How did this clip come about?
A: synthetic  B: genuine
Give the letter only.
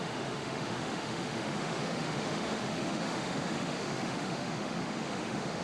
A